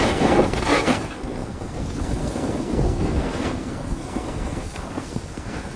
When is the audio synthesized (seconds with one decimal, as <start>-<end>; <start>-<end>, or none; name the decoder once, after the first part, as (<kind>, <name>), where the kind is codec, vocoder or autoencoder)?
0.0-5.8 (codec, SNAC)